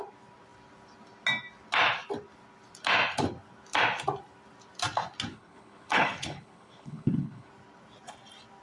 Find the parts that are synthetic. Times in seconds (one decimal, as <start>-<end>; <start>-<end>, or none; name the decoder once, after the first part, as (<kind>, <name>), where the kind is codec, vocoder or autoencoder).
5.3-7.5 (codec, HILCodec)